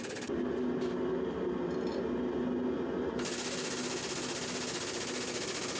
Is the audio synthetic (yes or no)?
no